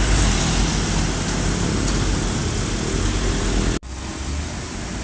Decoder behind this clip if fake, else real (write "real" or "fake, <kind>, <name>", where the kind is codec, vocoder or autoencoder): real